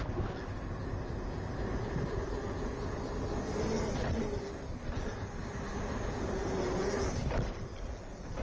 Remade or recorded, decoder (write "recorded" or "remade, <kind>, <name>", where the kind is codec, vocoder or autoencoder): recorded